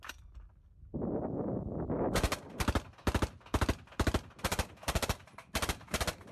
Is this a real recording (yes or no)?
yes